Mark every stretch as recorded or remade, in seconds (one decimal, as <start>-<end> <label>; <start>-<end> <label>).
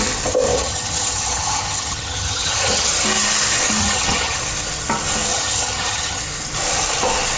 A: 0.0-0.5 recorded; 0.5-2.9 remade; 2.9-3.8 recorded; 3.8-4.4 remade; 4.4-5.3 recorded; 5.3-6.2 remade; 6.2-7.4 recorded